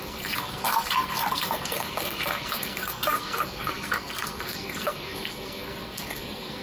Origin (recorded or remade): remade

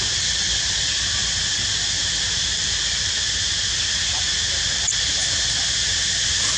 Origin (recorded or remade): remade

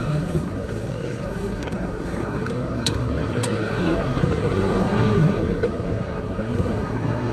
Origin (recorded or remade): remade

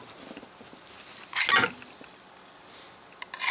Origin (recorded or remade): recorded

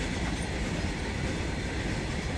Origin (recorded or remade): recorded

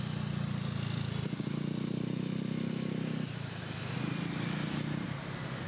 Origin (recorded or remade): recorded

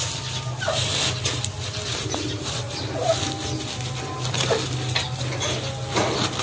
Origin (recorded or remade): recorded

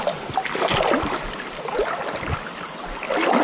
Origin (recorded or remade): recorded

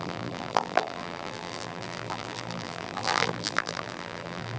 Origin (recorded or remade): remade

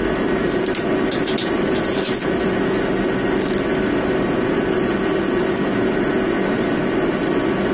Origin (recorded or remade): recorded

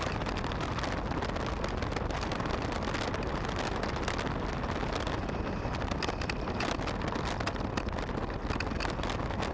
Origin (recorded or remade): recorded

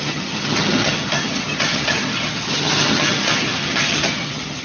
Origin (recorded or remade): remade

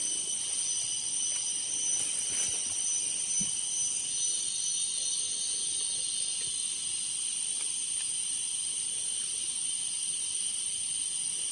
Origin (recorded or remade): recorded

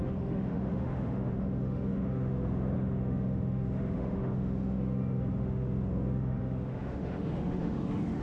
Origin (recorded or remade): remade